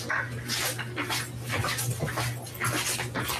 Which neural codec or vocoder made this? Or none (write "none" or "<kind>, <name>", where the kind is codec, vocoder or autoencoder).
none